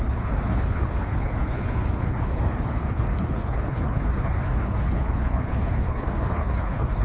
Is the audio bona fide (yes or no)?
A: no